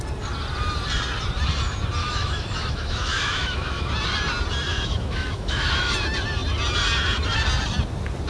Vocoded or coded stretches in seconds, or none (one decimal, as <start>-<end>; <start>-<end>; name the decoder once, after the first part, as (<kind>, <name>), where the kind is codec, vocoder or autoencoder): 2.0-3.9 (autoencoder, DAC-VAE); 4.7-5.9

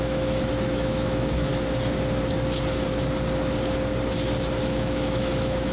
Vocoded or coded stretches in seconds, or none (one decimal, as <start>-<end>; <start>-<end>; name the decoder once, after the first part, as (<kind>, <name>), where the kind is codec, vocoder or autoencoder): 0.0-1.5 (autoencoder, DAC-VAE); 4.6-5.7

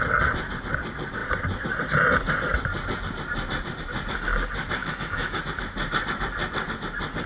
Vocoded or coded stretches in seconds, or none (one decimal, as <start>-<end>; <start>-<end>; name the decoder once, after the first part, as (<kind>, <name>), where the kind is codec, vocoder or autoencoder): 4.8-5.4 (autoencoder, DAC-VAE)

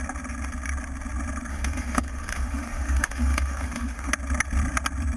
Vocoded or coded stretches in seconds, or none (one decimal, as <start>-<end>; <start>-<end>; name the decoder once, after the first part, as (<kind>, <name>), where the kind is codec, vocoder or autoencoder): 1.5-4.1 (autoencoder, DAC-VAE)

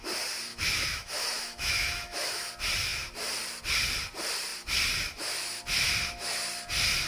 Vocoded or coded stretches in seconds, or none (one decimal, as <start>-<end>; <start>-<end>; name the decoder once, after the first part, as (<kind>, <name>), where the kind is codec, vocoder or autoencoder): 0.5-2.5 (autoencoder, DAC-VAE)

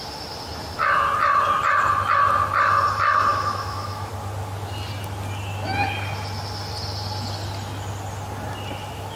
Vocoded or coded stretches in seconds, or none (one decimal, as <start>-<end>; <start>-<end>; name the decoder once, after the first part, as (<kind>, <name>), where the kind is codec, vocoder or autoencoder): 3.3-4.1 (autoencoder, DAC-VAE)

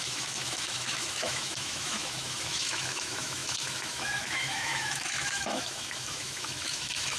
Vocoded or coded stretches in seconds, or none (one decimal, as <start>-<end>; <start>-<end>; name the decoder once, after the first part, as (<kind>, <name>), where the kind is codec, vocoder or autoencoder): 0.0-7.2 (autoencoder, DAC-VAE)